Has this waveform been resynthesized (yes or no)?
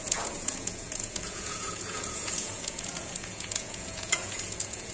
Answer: yes